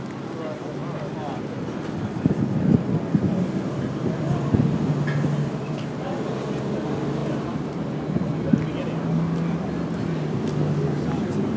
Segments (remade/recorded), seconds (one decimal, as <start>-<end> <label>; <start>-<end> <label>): 0.0-11.6 recorded